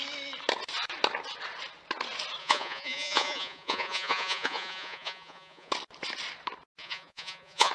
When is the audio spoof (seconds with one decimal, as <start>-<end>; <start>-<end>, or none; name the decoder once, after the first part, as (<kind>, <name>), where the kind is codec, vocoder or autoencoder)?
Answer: 2.4-5.7 (vocoder, Vocos); 6.8-7.7